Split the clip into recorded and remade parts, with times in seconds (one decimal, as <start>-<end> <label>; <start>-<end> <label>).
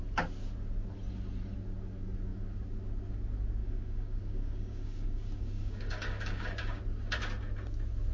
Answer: 0.0-3.6 recorded; 3.6-6.8 remade; 6.8-8.1 recorded